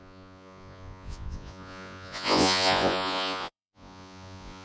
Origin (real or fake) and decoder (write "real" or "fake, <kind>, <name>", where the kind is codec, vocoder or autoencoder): fake, vocoder, Vocos